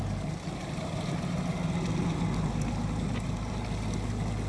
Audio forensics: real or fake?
real